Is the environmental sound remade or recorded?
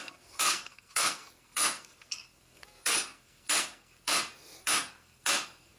remade